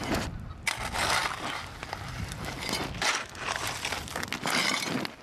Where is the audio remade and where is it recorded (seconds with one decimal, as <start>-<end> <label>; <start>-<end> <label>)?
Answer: 0.0-5.2 recorded